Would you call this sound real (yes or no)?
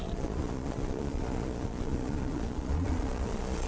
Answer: no